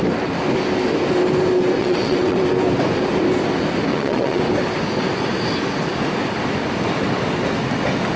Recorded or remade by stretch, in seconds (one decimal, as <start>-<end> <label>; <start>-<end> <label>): 0.0-1.8 recorded; 1.8-2.4 remade; 2.4-3.9 recorded; 3.9-4.4 remade; 4.4-8.2 recorded